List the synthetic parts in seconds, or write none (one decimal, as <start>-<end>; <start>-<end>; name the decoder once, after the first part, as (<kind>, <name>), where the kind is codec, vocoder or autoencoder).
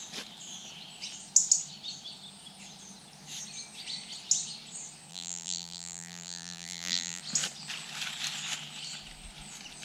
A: 5.1-7.2 (vocoder, BigVGAN v2)